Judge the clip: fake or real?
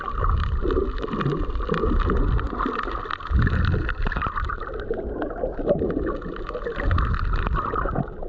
real